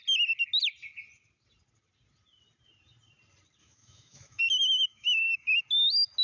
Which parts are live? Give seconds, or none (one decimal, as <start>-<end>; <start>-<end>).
0.0-3.6; 4.4-4.9; 5.6-6.2

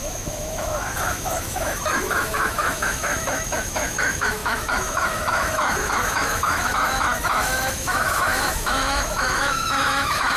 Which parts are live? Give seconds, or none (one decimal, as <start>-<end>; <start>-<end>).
none

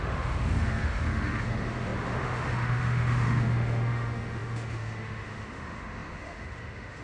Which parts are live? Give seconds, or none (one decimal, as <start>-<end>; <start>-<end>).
none

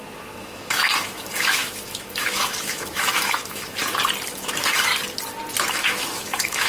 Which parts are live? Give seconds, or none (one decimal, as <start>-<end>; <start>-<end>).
3.8-4.3; 4.9-5.7

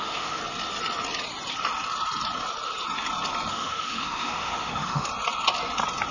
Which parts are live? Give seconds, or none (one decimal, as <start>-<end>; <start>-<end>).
0.4-3.5; 5.1-6.1

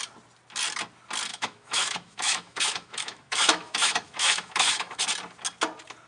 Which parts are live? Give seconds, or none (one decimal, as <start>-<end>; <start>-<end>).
0.0-1.3; 5.0-6.1

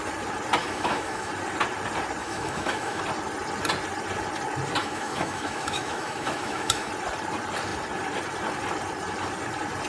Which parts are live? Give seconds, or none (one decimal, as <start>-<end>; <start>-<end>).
0.0-0.6; 1.3-2.2; 3.0-4.8; 6.9-9.9

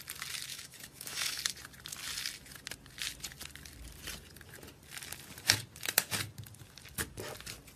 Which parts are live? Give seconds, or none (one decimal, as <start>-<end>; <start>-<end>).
0.0-0.5; 1.4-7.8